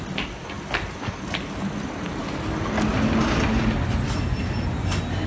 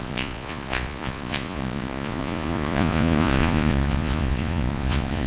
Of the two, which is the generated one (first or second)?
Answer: second